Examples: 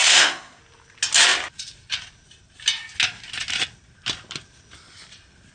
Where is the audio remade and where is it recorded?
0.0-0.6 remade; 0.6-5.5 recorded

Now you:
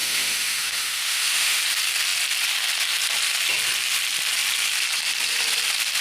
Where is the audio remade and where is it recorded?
0.0-1.6 remade; 1.6-6.0 recorded

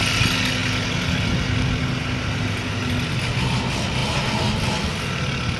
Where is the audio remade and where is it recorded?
0.0-4.0 recorded; 4.0-5.6 remade

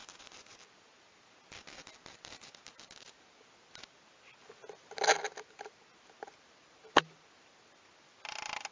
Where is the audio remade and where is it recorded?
0.0-8.7 recorded

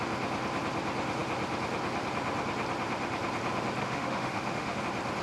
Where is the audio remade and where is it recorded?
0.0-3.8 recorded; 3.8-4.8 remade; 4.8-5.2 recorded

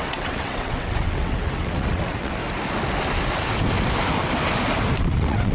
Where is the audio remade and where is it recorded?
0.0-2.4 remade; 2.4-5.0 recorded; 5.0-5.5 remade